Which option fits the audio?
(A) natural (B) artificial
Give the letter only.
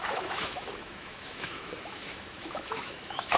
B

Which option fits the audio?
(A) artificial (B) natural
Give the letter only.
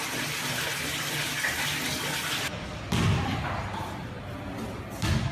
B